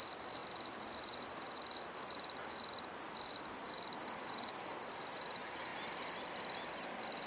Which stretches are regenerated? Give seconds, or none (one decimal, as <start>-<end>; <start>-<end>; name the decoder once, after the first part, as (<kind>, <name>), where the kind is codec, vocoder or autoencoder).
none